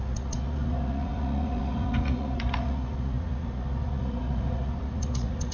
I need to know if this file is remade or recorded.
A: remade